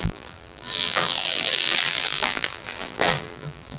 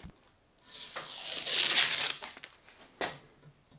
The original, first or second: second